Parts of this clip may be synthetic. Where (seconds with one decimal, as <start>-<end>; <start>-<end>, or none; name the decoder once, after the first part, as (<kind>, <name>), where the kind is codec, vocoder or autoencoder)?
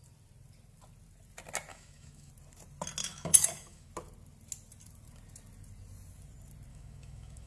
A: 1.7-2.3 (autoencoder, DAC-VAE); 3.0-3.9; 6.7-7.5